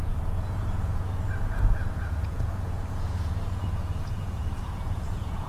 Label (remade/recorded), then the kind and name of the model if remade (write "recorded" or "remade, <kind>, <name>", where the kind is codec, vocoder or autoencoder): remade, vocoder, Vocos